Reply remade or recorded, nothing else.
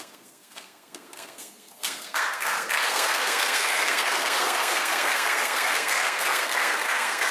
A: remade